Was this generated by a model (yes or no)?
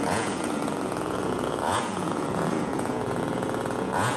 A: yes